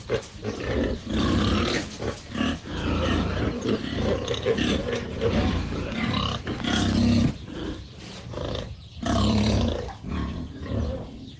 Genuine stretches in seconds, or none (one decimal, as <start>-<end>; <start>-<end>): 1.8-2.7; 4.8-7.3